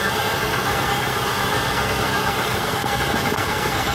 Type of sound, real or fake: fake